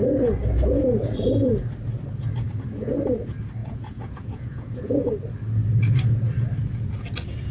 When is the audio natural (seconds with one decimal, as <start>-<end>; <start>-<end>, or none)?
0.0-3.6; 4.9-7.5